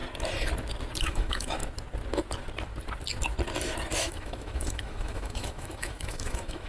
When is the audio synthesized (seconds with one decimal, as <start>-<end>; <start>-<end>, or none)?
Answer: 1.0-1.6; 4.0-6.7